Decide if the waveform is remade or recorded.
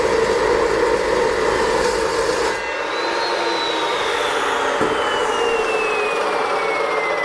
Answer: recorded